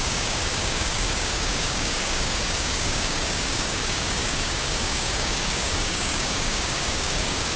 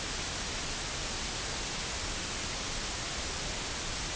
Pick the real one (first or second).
second